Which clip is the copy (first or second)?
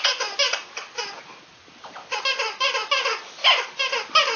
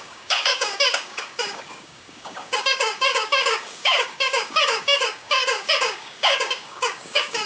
second